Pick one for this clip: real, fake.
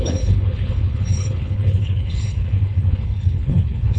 fake